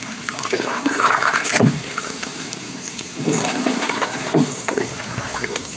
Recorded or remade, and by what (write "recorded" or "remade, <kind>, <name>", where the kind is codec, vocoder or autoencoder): remade, codec, SNAC